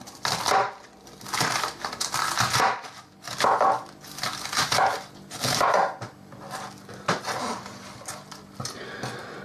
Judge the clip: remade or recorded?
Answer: recorded